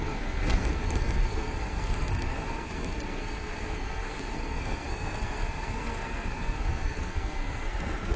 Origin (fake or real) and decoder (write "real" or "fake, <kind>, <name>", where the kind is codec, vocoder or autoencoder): fake, codec, SNAC